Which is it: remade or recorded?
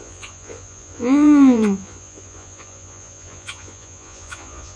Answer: remade